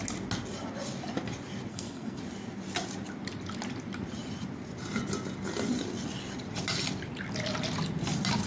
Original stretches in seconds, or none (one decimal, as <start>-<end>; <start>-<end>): 0.0-1.7; 2.2-8.5